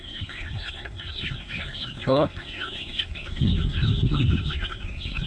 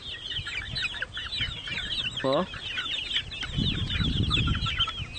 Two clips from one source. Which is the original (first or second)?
second